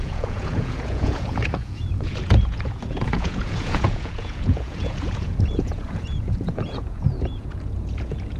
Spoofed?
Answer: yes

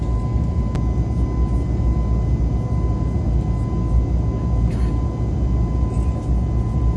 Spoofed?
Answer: no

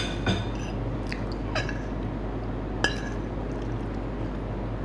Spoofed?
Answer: no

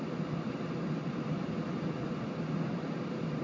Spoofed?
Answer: no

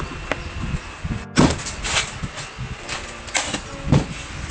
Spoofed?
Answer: no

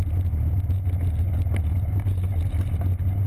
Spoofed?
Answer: no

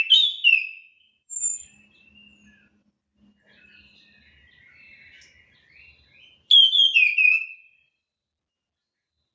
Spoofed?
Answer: no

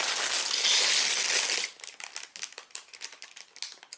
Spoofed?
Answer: no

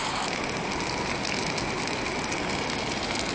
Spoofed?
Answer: no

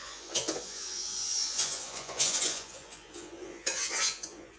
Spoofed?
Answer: yes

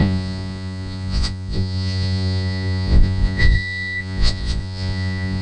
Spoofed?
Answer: yes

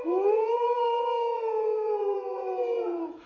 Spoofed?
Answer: yes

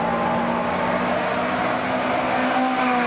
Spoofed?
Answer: no